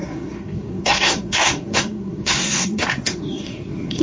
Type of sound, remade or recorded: remade